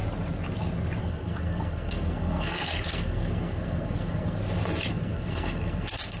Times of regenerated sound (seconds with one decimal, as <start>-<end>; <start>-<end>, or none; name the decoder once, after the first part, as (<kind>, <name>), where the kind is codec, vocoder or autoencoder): 1.0-4.4 (codec, SNAC); 4.9-6.2